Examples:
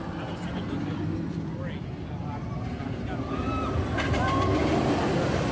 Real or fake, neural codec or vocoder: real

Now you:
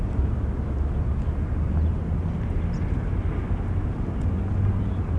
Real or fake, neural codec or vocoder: real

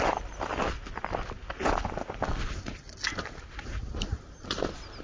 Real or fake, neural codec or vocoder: real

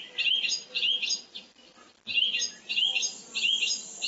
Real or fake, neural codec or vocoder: real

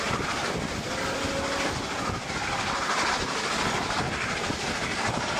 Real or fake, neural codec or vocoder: real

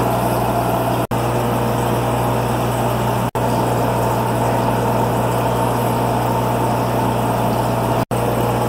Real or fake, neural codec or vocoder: real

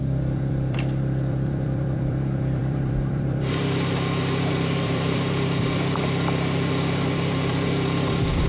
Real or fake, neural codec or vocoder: fake, vocoder, BigVGAN v2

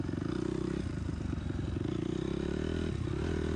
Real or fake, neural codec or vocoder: real